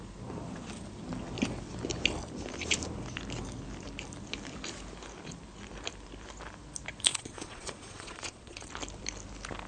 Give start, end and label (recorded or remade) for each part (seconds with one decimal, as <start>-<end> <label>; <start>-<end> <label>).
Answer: 0.0-7.1 recorded; 7.1-8.7 remade; 8.7-9.7 recorded